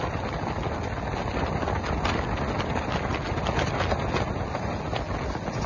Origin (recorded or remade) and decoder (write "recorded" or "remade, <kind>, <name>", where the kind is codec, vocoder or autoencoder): recorded